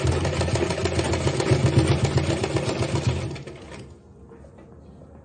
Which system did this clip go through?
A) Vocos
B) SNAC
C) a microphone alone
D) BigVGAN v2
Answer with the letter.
C